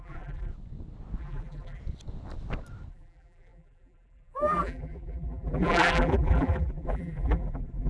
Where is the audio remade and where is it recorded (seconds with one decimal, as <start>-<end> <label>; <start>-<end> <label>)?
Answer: 0.0-0.5 remade; 0.5-1.2 recorded; 1.2-1.8 remade; 1.8-2.9 recorded; 2.9-7.9 remade